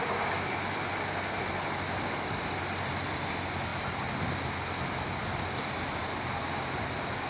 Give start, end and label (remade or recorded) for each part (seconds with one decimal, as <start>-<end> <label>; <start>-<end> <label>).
0.0-7.3 recorded